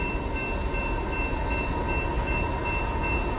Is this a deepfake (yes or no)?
no